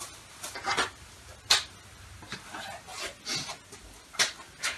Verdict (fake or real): real